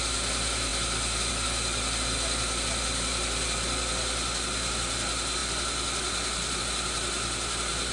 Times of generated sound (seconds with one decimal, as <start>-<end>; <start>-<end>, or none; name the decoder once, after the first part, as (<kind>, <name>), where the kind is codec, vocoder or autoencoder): none